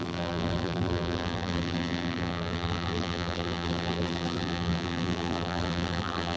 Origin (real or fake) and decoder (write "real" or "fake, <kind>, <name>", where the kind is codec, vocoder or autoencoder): fake, vocoder, BigVGAN v2